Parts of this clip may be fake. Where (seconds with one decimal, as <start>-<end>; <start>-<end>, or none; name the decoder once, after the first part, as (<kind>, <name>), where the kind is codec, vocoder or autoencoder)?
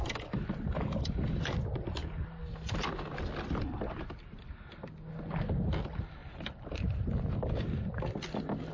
6.2-7.0 (vocoder, BigVGAN v2)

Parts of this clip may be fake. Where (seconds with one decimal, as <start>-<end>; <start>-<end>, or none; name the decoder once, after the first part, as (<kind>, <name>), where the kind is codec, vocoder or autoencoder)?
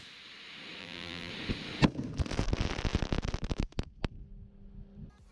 0.8-1.3 (vocoder, BigVGAN v2)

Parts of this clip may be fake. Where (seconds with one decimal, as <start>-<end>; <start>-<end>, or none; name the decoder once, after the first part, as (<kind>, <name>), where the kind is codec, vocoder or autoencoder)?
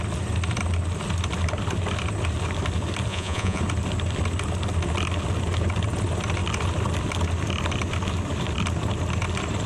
3.1-3.6 (vocoder, Vocos)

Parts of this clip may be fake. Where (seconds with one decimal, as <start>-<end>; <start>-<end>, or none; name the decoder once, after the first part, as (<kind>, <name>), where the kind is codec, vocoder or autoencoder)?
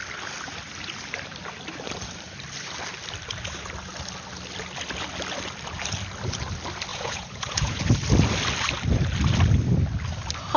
6.9-7.8 (vocoder, Vocos)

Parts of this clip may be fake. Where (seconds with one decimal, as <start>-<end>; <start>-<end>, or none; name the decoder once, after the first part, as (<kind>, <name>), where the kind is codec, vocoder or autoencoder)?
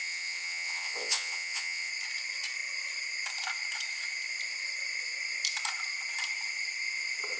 0.0-1.9 (vocoder, WaveNeXt)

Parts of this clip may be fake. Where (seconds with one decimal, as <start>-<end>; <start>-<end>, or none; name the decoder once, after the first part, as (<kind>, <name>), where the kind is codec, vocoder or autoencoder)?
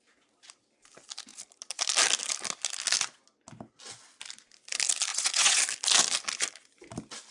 5.1-5.6 (vocoder, Vocos)